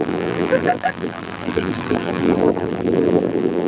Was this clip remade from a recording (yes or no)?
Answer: yes